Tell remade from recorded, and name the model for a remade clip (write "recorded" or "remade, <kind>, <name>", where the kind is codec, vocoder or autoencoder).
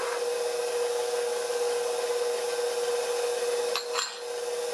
recorded